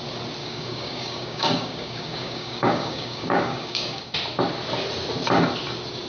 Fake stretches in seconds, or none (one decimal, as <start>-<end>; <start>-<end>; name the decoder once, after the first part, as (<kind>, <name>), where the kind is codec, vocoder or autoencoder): 0.4-4.1 (codec, DAC)